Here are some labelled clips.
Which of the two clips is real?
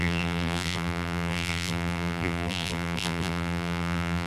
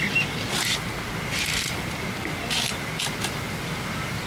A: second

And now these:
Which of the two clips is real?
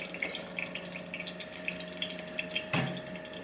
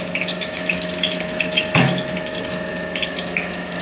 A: first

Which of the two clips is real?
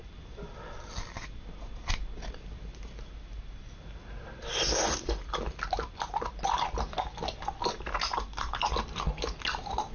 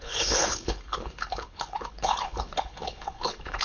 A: first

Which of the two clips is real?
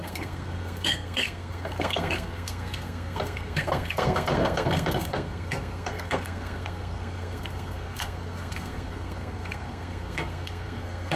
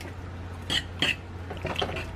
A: second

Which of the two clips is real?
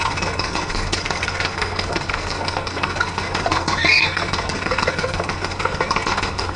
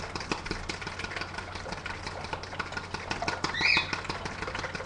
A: second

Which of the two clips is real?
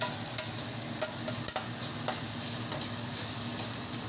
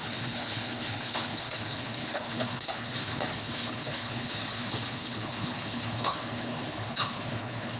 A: first